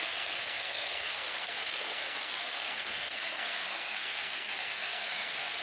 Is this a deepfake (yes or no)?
yes